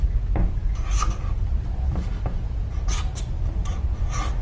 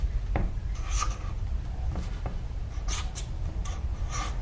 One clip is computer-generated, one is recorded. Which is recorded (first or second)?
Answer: first